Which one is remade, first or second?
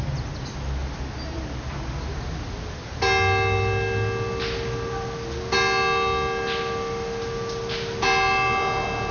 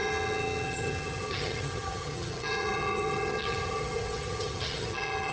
second